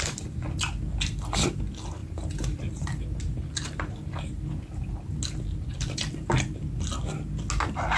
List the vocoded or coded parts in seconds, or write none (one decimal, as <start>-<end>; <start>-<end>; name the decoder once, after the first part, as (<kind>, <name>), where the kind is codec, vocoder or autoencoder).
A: 2.0-3.2 (vocoder, BigVGAN v2)